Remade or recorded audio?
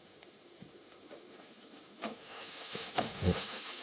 remade